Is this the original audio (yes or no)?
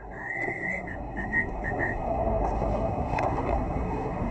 no